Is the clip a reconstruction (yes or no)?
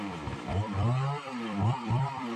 yes